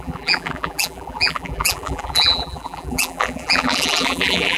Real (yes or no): no